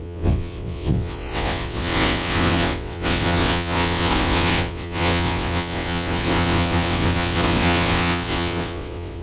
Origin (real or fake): fake